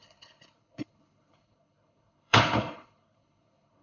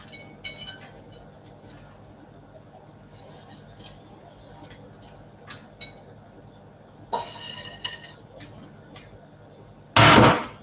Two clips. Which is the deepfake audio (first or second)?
first